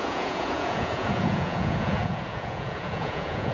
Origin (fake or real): fake